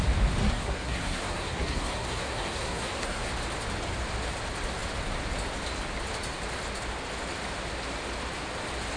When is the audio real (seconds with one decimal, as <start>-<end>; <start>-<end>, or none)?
0.0-0.4; 3.3-9.0